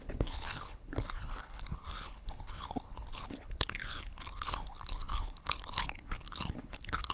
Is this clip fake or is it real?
fake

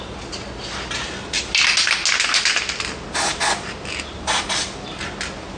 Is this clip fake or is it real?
real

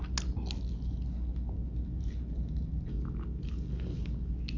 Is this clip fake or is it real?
real